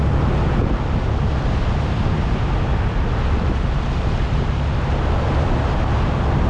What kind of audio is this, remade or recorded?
recorded